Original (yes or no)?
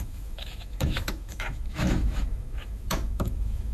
no